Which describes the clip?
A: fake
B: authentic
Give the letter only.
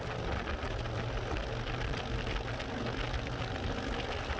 B